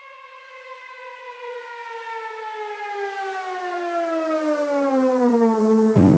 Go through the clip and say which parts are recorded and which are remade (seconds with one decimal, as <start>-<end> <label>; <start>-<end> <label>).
0.0-1.7 remade; 1.7-4.9 recorded; 4.9-6.2 remade